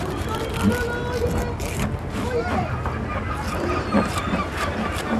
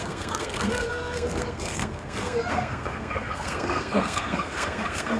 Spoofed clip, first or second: second